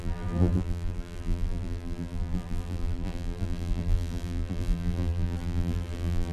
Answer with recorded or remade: remade